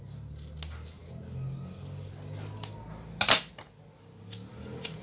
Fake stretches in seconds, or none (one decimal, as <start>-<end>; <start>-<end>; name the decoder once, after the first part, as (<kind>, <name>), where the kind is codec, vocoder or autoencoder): none